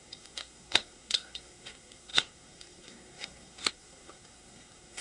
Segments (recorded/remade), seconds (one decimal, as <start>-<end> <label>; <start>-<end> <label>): 0.0-5.0 remade